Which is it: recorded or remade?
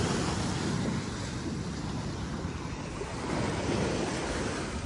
recorded